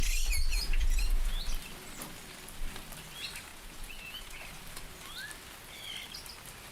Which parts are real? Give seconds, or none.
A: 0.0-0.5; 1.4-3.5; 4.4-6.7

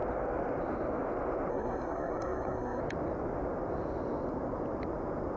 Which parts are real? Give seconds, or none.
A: 0.0-1.5; 2.8-5.4